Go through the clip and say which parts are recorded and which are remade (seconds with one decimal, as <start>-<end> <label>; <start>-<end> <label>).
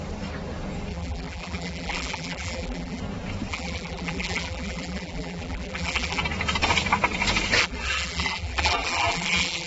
0.0-0.9 recorded; 0.9-3.0 remade; 3.0-3.5 recorded; 3.5-6.2 remade; 6.2-7.6 recorded; 7.6-9.7 remade